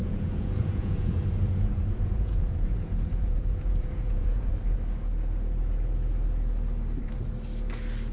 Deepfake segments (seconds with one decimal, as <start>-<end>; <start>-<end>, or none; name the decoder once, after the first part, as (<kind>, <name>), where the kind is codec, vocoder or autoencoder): 0.0-4.5 (vocoder, Vocos)